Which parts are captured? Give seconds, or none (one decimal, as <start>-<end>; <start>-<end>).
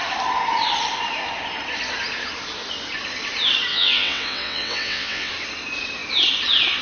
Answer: 0.0-3.7; 5.3-6.8